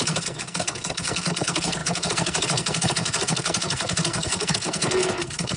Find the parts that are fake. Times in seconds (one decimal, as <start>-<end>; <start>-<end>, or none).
0.0-5.6